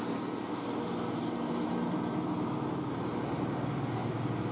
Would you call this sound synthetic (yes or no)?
no